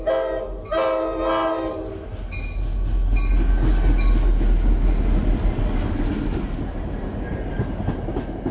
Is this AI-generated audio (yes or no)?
no